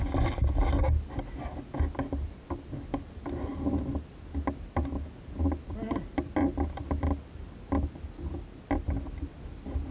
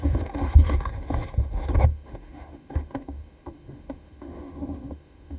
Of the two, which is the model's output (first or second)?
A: second